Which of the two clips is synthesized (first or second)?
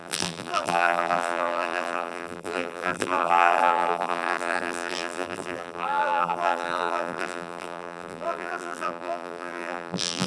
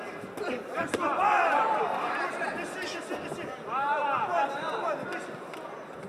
first